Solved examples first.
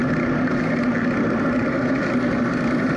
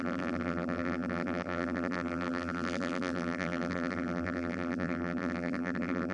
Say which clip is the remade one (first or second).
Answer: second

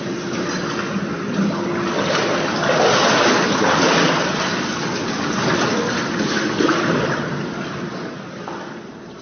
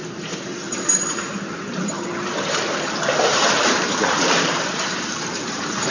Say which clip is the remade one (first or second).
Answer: second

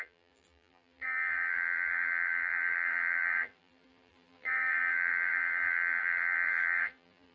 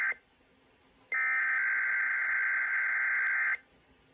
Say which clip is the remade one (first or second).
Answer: first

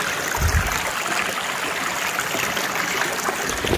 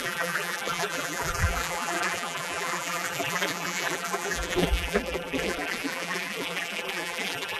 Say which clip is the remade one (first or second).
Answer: second